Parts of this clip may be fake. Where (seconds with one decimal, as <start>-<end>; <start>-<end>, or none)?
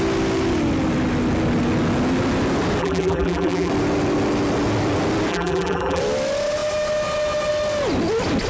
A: 2.8-3.7; 5.3-6.0